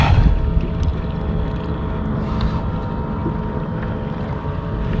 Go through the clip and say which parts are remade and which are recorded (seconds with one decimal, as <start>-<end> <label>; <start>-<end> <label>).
0.0-5.0 recorded